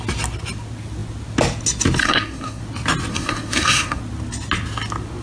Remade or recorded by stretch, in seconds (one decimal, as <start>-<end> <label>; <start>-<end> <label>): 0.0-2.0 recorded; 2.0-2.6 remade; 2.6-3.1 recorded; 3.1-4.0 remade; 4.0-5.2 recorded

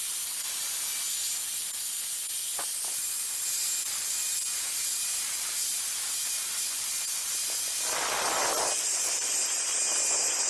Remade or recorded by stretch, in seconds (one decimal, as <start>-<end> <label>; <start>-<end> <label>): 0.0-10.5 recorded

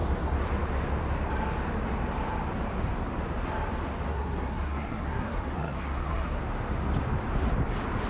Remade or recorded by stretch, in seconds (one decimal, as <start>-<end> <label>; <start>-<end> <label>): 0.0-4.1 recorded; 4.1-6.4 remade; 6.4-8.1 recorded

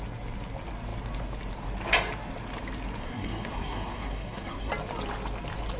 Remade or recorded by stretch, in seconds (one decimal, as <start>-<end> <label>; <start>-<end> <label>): 0.0-3.0 recorded; 3.0-4.7 remade; 4.7-5.8 recorded

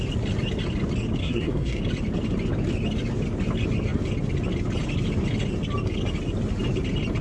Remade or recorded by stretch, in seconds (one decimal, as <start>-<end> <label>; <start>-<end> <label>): 0.0-1.2 recorded; 1.2-1.8 remade; 1.8-7.2 recorded